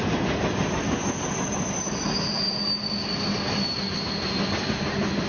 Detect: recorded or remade recorded